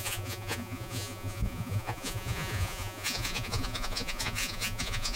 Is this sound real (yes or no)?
no